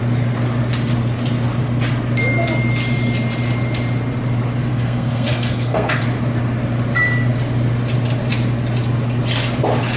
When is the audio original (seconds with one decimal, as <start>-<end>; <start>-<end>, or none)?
0.0-4.7; 6.0-10.0